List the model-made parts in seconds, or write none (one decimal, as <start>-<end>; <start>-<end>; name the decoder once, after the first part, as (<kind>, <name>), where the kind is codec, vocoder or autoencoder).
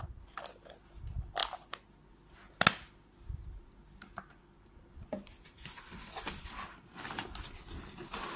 0.0-1.4 (vocoder, BigVGAN v2); 4.2-8.4